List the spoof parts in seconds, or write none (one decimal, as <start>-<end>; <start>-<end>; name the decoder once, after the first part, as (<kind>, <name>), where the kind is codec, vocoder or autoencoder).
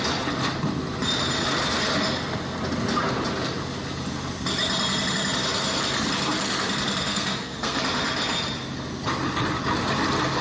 7.0-7.8 (codec, SNAC)